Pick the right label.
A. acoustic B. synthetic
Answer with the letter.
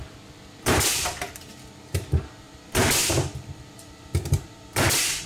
B